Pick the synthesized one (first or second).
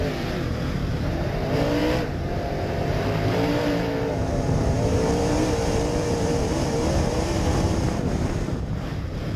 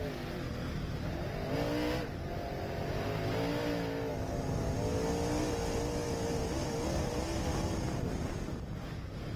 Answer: first